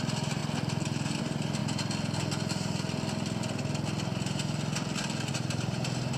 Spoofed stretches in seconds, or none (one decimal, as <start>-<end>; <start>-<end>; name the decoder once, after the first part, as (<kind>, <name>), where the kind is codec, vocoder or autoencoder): 0.0-0.4 (vocoder, BigVGAN v2); 1.2-1.6; 5.3-6.2